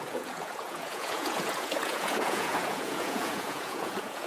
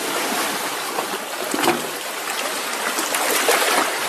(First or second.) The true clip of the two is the second